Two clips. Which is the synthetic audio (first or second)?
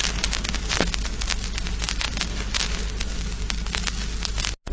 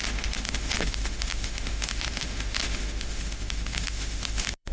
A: second